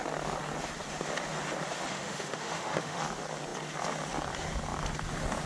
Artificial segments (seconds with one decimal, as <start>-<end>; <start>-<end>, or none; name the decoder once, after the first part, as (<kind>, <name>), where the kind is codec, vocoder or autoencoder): 1.9-3.0 (autoencoder, DAC-VAE)